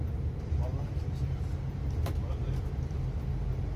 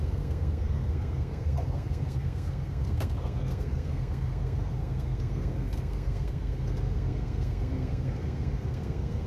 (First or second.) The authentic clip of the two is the first